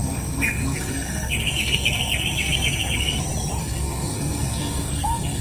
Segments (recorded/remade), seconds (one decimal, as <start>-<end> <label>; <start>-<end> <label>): 0.0-3.2 remade; 3.2-3.6 recorded; 3.6-5.4 remade